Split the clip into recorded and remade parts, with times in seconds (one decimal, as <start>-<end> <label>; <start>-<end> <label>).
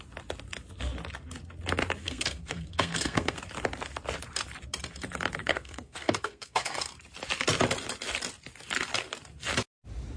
0.0-2.0 recorded; 2.0-3.4 remade; 3.4-5.4 recorded; 5.4-6.9 remade; 6.9-10.2 recorded